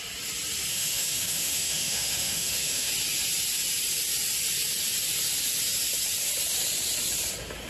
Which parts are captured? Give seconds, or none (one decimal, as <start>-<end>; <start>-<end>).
0.0-0.7; 2.9-7.7